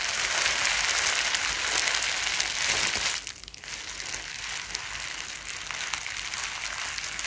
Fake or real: real